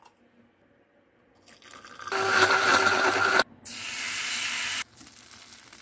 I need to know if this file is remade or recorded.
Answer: recorded